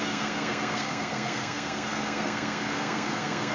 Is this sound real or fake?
fake